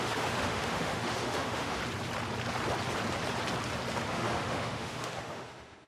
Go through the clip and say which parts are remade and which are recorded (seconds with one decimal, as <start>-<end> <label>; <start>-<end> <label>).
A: 0.0-1.8 remade; 1.8-4.1 recorded; 4.1-5.9 remade